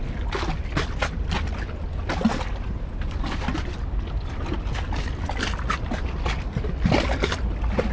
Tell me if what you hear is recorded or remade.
recorded